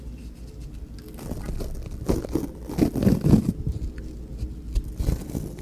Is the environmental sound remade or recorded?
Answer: recorded